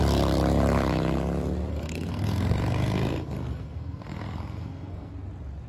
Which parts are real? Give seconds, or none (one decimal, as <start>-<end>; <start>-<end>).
0.0-1.7; 5.1-5.7